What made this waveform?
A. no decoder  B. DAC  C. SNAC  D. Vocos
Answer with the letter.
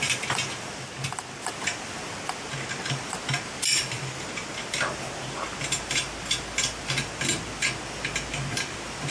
A